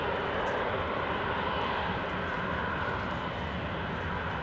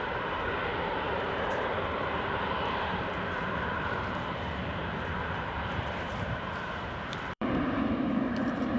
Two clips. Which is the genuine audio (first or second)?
first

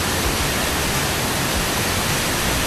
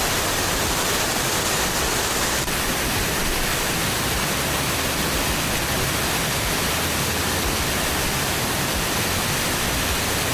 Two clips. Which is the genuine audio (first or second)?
first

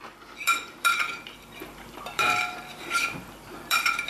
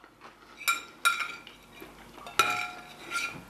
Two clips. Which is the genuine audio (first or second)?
second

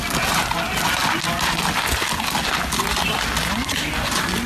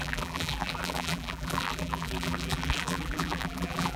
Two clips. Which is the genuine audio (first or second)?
first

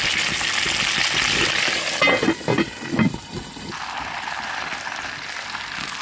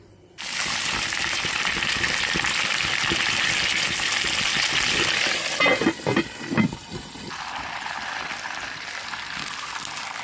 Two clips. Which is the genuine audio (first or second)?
first